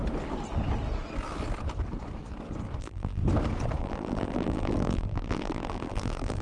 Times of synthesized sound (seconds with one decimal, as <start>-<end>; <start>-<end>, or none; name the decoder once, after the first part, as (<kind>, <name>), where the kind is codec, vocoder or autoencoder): 2.8-3.2 (vocoder, BigVGAN v2); 3.8-6.4